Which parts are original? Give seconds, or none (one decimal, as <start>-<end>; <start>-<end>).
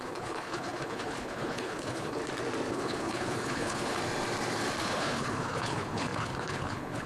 2.2-2.7; 4.0-4.8